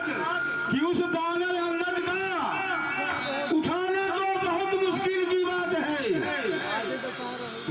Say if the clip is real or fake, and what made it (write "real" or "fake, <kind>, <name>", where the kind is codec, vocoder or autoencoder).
real